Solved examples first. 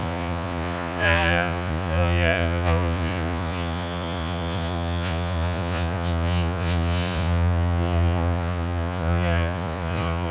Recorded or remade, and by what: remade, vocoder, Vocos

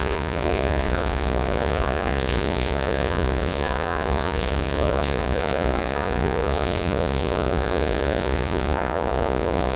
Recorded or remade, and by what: remade, vocoder, Vocos